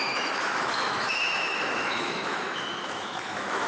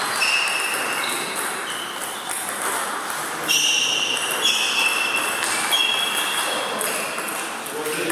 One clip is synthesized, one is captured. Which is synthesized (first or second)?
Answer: first